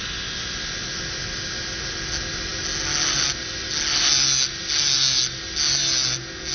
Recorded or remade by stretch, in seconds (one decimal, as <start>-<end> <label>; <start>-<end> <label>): 0.0-6.5 recorded